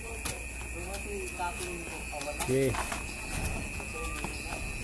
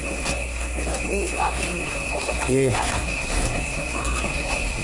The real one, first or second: first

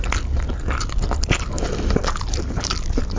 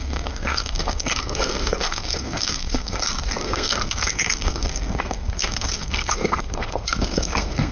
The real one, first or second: first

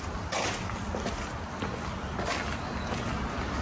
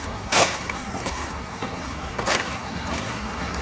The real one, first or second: first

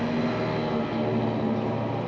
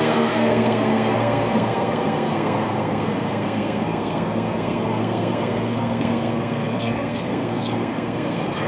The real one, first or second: first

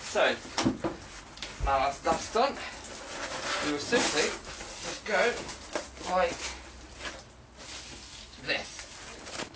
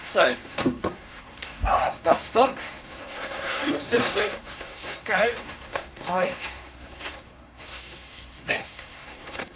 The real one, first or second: first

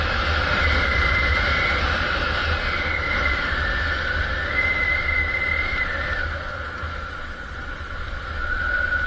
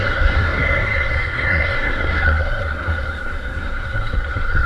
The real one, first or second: first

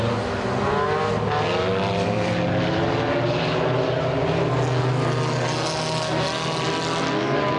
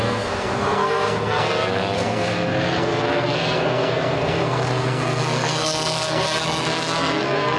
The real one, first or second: first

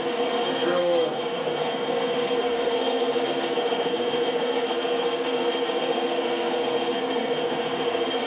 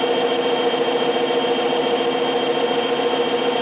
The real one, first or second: second